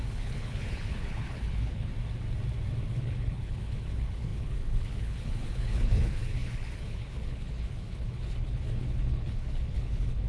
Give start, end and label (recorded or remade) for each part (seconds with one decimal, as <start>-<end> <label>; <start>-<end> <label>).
0.0-1.9 remade; 1.9-2.9 recorded; 2.9-10.3 remade